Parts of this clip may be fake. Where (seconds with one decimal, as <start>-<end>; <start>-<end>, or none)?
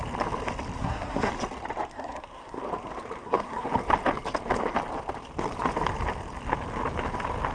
0.8-1.3; 1.9-2.6; 3.2-3.7